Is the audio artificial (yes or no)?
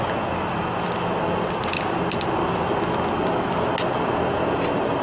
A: no